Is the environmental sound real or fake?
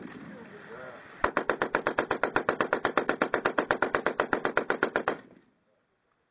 real